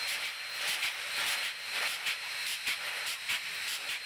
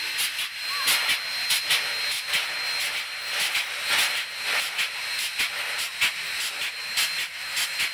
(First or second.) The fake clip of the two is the first